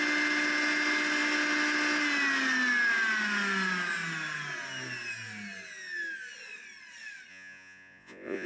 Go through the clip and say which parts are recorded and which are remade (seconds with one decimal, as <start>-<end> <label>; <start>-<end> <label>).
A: 0.0-7.3 recorded; 7.3-8.5 remade